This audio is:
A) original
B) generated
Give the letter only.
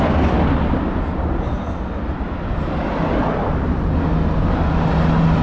A